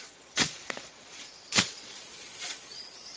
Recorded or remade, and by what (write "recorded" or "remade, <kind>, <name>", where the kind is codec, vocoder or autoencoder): remade, vocoder, Vocos